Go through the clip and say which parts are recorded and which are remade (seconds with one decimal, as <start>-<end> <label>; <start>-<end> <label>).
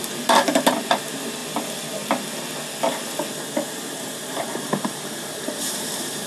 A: 0.0-1.4 remade; 1.4-3.7 recorded; 3.7-6.3 remade